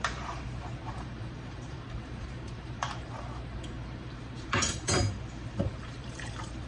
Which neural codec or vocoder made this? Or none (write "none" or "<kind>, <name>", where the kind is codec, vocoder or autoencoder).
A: vocoder, BigVGAN v2